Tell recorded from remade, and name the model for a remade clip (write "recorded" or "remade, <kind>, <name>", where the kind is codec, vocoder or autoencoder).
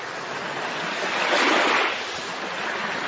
recorded